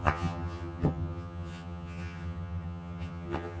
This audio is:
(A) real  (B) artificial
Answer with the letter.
B